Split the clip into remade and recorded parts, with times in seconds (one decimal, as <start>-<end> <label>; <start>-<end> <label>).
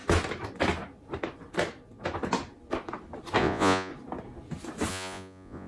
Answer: 0.0-3.4 recorded; 3.4-3.9 remade; 3.9-4.9 recorded; 4.9-5.7 remade